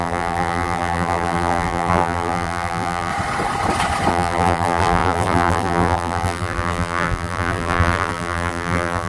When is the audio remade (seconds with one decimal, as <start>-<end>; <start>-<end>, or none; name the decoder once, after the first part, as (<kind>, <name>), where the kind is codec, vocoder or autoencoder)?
0.0-3.1 (vocoder, BigVGAN v2); 4.1-9.1